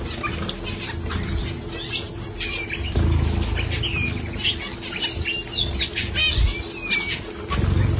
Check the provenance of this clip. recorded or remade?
recorded